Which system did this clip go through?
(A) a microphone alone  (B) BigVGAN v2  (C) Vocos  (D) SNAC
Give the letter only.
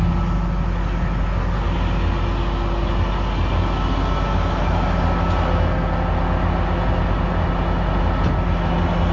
A